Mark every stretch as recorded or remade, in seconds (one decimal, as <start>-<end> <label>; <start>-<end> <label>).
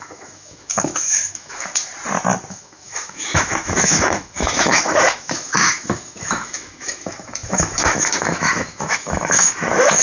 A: 0.0-1.8 remade; 1.8-2.5 recorded; 2.5-10.0 remade